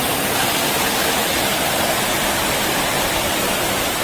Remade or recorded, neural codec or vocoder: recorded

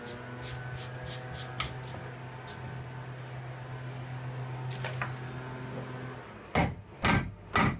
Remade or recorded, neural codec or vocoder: recorded